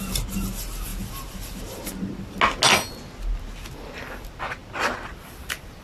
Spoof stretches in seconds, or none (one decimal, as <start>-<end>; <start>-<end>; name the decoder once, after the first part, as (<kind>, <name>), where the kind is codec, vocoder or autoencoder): none